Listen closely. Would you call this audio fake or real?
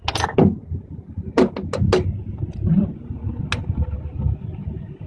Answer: real